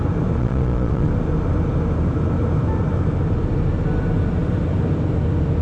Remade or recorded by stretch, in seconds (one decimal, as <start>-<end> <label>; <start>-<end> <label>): 0.0-0.4 recorded; 0.4-1.1 remade; 1.1-5.6 recorded